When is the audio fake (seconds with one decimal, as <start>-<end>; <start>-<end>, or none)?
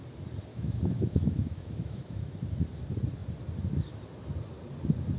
0.5-2.4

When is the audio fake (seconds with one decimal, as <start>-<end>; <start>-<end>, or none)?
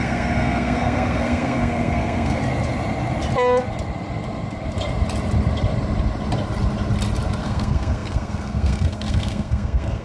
0.0-2.4; 7.4-10.0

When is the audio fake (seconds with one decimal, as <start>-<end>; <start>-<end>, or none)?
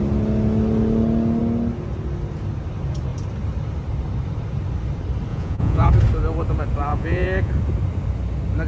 5.3-5.9; 6.9-7.5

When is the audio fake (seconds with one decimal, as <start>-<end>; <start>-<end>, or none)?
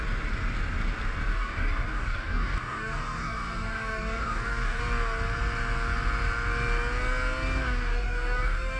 1.3-4.8; 7.6-8.8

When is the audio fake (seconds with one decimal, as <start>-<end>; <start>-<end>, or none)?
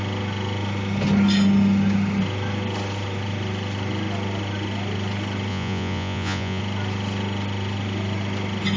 5.5-6.6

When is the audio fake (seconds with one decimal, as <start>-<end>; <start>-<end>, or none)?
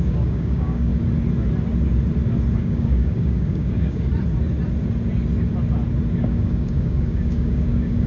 0.0-0.9; 2.6-4.1; 6.2-8.1